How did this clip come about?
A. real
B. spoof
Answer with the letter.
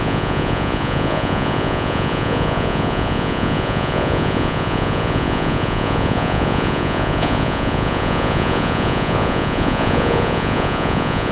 B